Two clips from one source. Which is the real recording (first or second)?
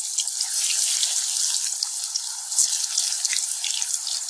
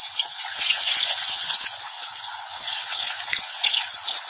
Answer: first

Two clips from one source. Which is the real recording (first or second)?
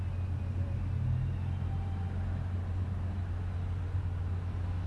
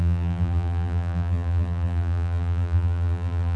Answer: first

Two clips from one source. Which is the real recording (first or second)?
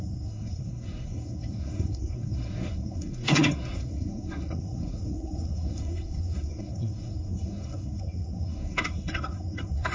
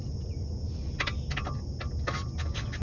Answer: second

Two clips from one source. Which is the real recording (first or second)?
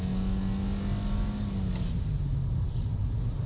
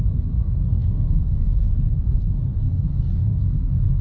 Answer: first